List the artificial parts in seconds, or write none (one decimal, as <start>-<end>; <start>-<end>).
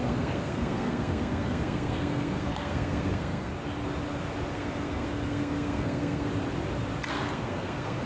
0.0-3.5; 4.5-6.3; 7.1-8.1